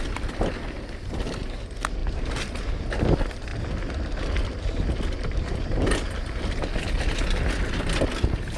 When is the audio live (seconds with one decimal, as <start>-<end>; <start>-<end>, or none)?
0.0-8.6